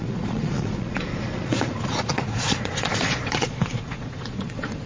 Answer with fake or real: fake